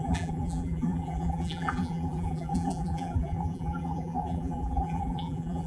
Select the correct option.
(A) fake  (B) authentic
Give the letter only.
A